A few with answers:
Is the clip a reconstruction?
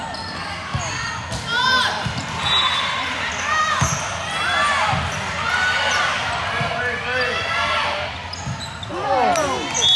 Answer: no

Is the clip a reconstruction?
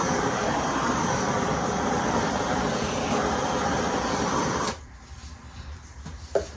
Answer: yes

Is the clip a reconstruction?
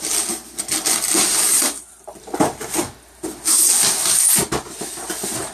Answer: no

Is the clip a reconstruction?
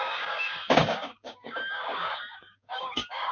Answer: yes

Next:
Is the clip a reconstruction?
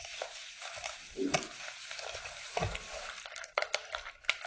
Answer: no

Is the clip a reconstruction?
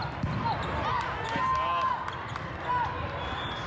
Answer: no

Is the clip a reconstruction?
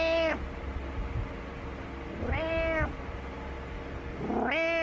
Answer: no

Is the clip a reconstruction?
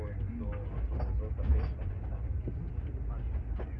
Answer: no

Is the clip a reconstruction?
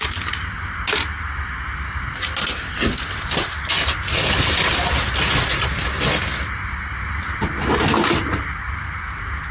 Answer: no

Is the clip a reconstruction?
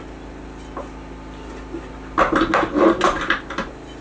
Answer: no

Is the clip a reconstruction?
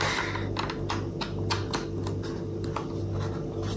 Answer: no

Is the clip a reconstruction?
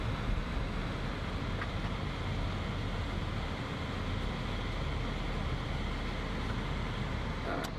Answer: no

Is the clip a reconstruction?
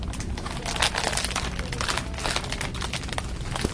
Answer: no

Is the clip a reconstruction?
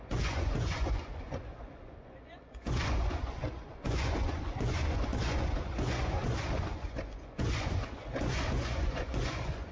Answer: yes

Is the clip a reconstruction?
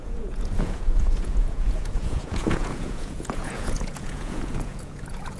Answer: yes